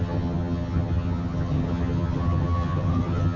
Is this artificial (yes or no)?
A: yes